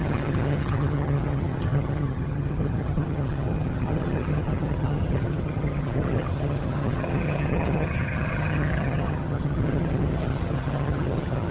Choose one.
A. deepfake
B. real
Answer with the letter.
A